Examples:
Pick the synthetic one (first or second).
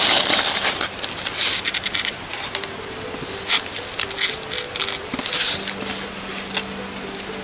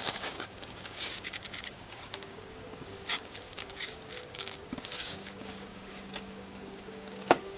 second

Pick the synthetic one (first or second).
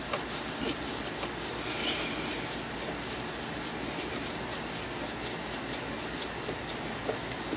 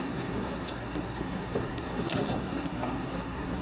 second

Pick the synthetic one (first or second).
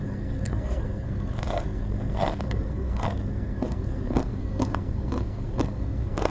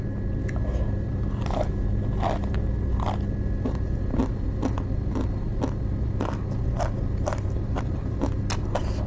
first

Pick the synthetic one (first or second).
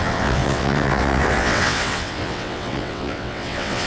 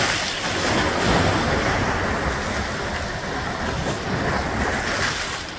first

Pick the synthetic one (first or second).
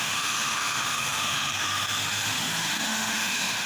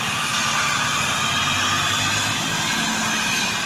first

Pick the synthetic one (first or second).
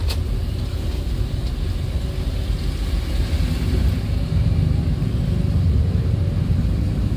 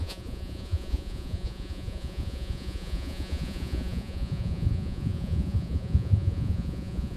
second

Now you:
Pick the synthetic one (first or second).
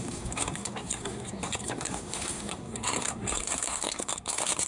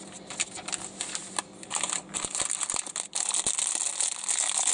first